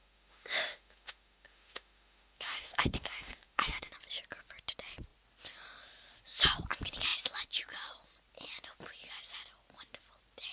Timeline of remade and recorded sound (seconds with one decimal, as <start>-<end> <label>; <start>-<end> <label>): 0.0-3.9 remade; 3.9-10.5 recorded